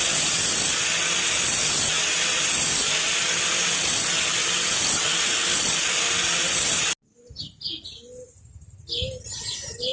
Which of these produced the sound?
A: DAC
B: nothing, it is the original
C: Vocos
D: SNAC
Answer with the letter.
B